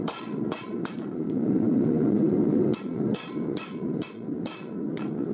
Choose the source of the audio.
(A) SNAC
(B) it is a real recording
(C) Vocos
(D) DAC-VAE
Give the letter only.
C